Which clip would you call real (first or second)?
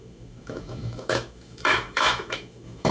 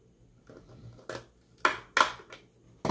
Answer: second